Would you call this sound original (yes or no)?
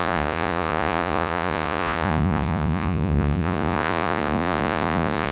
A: no